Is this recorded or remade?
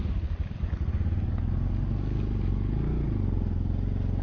recorded